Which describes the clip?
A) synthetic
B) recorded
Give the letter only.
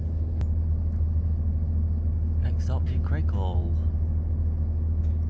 B